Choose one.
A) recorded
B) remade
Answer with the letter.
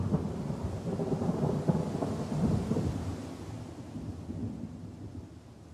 A